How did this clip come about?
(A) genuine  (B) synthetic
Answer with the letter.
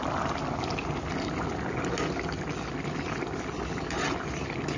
A